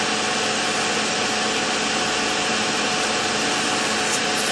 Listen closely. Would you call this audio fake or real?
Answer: real